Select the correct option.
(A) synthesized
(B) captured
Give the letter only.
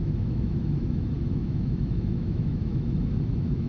A